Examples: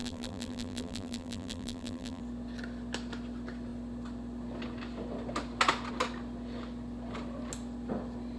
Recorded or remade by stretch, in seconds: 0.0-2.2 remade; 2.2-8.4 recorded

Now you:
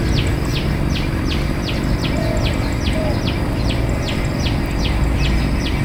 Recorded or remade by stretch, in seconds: 0.0-0.5 recorded; 0.5-1.2 remade; 1.2-5.8 recorded

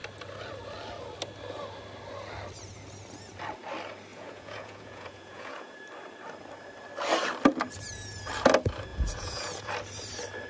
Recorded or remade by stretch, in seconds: 0.0-4.1 recorded; 4.1-5.8 remade; 5.8-8.9 recorded; 8.9-9.7 remade; 9.7-10.5 recorded

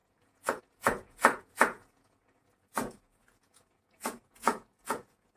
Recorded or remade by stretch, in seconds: 0.0-5.4 remade

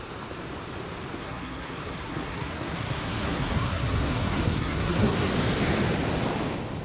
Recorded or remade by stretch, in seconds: 0.0-1.2 recorded; 1.2-5.3 remade; 5.3-6.8 recorded

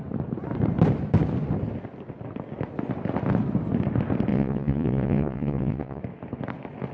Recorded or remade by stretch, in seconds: 0.0-4.3 recorded; 4.3-6.0 remade; 6.0-6.9 recorded